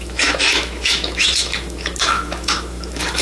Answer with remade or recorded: remade